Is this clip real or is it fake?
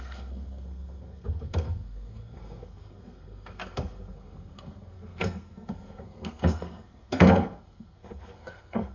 fake